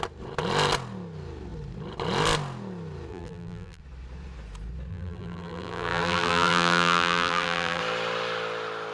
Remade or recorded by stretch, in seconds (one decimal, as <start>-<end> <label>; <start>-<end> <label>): 0.0-3.1 recorded; 3.1-3.8 remade; 3.8-4.9 recorded; 4.9-7.8 remade; 7.8-8.9 recorded